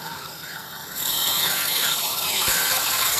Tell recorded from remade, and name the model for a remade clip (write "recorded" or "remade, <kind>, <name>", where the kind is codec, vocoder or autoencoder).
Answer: remade, codec, SNAC